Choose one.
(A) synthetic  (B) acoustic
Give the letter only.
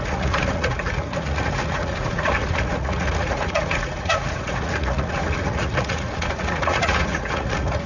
A